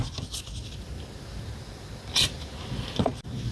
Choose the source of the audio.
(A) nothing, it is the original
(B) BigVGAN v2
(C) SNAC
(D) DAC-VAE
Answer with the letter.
A